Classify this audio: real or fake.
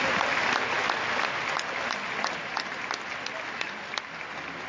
real